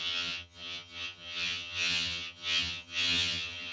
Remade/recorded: remade